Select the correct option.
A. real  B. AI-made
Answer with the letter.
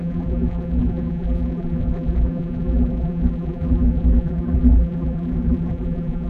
B